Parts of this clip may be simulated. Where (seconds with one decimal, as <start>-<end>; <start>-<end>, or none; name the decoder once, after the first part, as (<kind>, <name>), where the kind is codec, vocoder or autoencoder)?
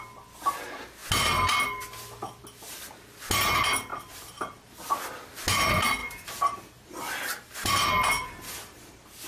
3.9-4.6 (vocoder, BigVGAN v2); 6.0-8.9